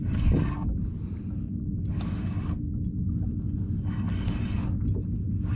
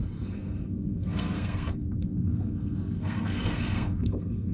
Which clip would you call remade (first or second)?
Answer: second